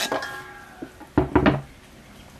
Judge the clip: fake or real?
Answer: real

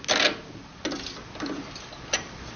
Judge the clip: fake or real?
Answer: real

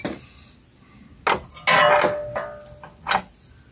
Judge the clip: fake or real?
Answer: real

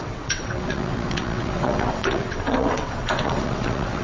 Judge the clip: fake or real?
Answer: fake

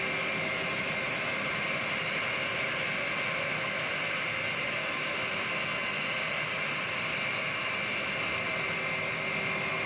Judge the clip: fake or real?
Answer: real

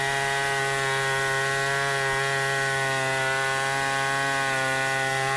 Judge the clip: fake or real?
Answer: real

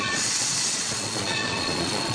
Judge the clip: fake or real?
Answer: fake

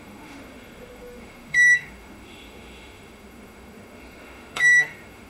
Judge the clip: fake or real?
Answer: fake